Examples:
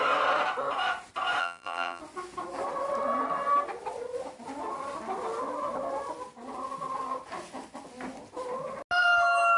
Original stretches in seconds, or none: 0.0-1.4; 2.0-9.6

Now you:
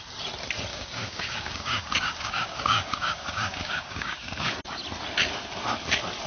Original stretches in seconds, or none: 0.0-0.7; 4.5-6.3

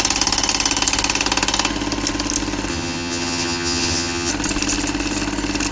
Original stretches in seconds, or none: 0.0-2.7; 4.3-5.7

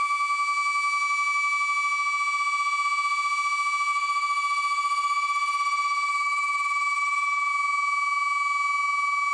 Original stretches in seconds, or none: 0.0-3.9; 7.5-9.3